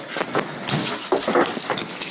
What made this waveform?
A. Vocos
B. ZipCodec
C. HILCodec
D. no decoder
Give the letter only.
D